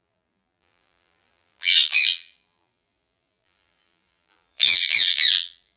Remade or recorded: remade